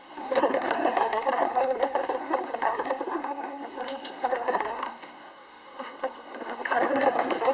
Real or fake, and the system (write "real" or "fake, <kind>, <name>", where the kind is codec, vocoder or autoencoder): fake, codec, SNAC